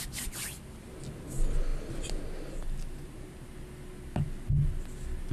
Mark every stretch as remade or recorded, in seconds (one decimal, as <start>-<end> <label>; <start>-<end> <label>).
0.0-5.3 recorded